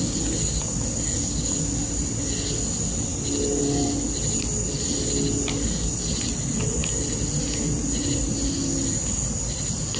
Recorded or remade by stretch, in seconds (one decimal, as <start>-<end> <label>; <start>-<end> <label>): 0.0-10.0 recorded